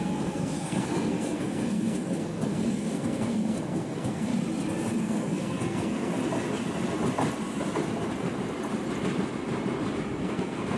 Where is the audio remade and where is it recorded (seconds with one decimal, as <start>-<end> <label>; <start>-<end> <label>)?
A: 0.0-4.3 remade; 4.3-5.0 recorded; 5.0-6.2 remade; 6.2-10.2 recorded; 10.2-10.8 remade